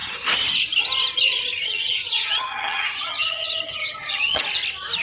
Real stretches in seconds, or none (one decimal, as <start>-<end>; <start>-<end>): 0.0-1.5; 4.4-5.0